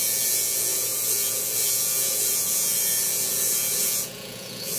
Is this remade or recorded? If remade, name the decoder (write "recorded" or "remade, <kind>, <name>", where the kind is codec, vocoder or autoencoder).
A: remade, vocoder, Vocos